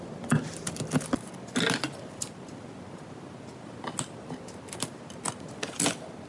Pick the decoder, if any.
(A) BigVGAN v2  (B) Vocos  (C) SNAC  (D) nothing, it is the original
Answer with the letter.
D